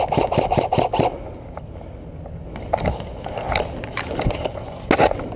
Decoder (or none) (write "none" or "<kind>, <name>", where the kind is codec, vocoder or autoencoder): none